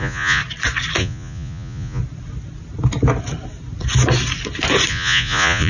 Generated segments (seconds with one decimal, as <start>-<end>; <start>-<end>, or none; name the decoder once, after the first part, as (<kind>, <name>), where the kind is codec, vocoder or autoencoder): 0.0-0.4 (vocoder, Vocos); 1.0-2.0; 4.9-5.7